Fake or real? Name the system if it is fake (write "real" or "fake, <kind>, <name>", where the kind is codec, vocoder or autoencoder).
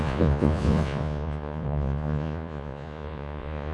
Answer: fake, vocoder, Vocos